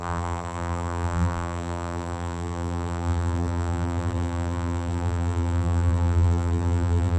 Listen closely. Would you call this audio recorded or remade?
remade